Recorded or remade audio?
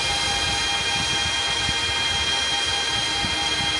recorded